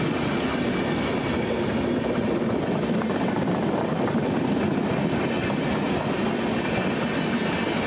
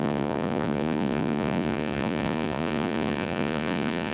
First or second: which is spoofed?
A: second